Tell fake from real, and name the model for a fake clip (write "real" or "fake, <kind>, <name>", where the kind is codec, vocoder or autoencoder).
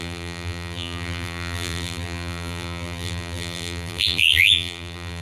fake, vocoder, BigVGAN v2